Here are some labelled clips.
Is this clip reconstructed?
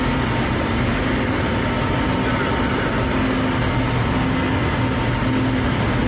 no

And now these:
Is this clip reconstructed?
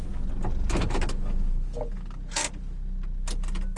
no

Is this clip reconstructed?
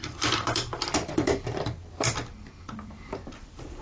yes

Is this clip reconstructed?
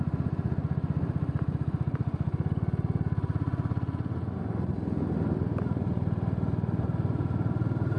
no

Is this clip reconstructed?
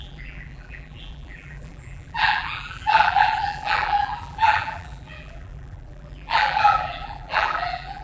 yes